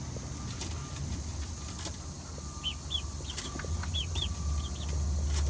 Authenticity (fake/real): real